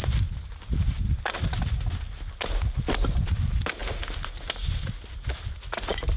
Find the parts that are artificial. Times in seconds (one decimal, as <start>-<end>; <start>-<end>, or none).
none